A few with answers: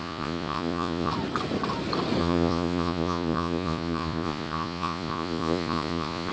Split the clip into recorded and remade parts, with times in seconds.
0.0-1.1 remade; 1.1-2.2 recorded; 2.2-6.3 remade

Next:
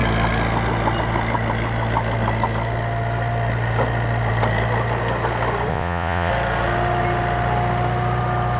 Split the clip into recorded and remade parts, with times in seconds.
0.0-5.7 recorded; 5.7-6.3 remade; 6.3-8.6 recorded

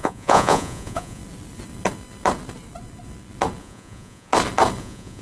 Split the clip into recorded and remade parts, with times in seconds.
0.0-1.2 remade; 1.2-3.6 recorded; 3.6-4.3 remade; 4.3-4.8 recorded; 4.8-5.2 remade